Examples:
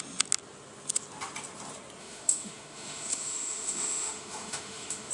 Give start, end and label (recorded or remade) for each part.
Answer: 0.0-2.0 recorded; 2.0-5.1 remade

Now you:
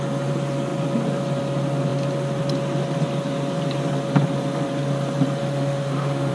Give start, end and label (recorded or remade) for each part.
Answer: 0.0-5.4 recorded; 5.4-6.3 remade

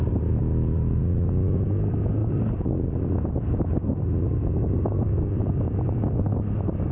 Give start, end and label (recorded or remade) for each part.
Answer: 0.0-6.9 recorded

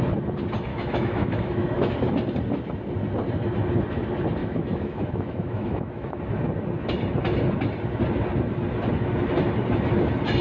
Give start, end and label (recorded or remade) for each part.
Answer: 0.0-0.7 recorded; 0.7-1.9 remade; 1.9-4.4 recorded; 4.4-6.2 remade; 6.2-10.4 recorded

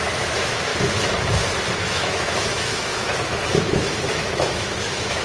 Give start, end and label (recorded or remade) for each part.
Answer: 0.0-0.7 remade; 0.7-1.8 recorded; 1.8-5.2 remade

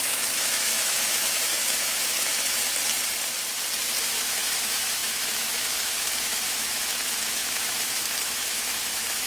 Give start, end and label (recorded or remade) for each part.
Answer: 0.0-2.6 remade; 2.6-4.0 recorded; 4.0-9.3 remade